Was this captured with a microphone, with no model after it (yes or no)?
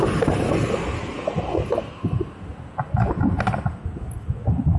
yes